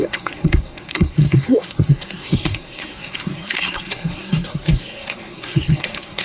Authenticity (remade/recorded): remade